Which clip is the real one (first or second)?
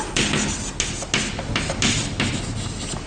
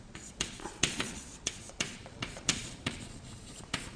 first